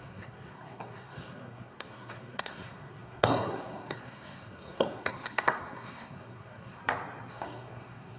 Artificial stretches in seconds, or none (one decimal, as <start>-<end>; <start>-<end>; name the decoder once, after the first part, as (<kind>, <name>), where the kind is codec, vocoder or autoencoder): 0.0-6.8 (codec, SNAC); 7.3-8.2